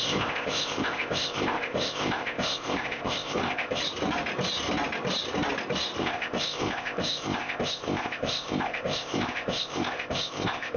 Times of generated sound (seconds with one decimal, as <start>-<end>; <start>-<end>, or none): 0.0-3.8; 6.0-10.8